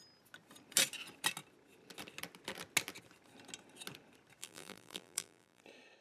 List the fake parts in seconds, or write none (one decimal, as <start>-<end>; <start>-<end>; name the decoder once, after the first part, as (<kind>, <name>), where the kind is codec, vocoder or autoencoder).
4.4-5.6 (vocoder, BigVGAN v2)